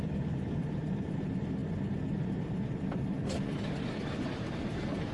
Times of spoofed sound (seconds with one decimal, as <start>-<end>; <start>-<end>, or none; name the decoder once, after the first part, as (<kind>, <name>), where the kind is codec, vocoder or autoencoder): none